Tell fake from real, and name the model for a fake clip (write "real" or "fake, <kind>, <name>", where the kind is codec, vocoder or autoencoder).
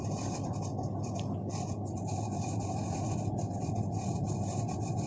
real